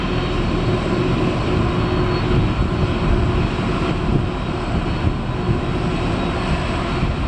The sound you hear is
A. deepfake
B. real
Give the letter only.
B